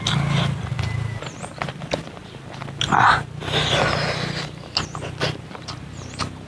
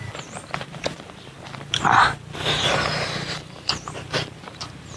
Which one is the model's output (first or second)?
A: second